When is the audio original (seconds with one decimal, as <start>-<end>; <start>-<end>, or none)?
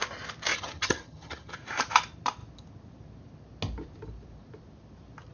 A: 0.0-0.5; 1.5-5.3